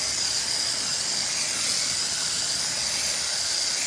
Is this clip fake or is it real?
real